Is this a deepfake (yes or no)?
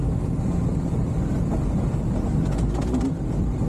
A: no